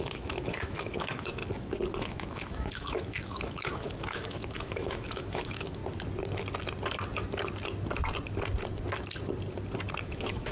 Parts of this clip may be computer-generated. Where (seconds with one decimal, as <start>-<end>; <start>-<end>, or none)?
0.0-1.4; 2.0-5.8; 10.0-10.5